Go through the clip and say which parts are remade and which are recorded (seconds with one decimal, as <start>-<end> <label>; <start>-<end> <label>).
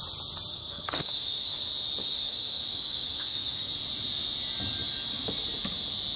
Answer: 0.0-0.5 recorded; 0.5-1.6 remade; 1.6-2.0 recorded; 2.0-3.7 remade; 3.7-6.2 recorded